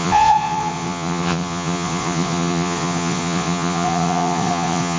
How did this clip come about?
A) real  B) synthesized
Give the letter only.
B